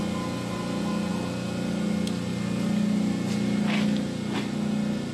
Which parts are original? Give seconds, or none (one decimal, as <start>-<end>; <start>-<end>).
0.0-5.1